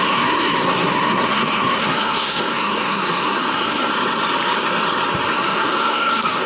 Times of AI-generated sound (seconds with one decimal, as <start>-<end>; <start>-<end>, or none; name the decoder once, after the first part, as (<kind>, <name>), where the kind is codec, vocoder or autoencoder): 0.0-3.9 (codec, SNAC); 5.3-6.5